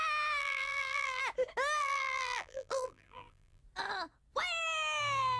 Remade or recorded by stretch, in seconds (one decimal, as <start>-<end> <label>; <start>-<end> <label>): 0.0-0.4 recorded; 0.4-1.2 remade; 1.2-1.8 recorded; 1.8-3.6 remade; 3.6-5.4 recorded